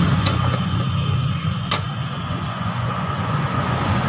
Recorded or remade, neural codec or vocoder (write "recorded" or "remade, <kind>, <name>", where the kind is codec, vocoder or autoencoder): remade, vocoder, Vocos